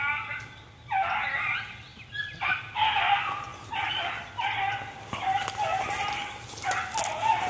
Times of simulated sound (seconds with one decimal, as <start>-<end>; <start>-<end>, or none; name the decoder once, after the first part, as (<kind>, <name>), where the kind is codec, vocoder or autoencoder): none